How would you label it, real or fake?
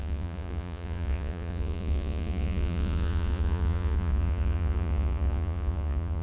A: fake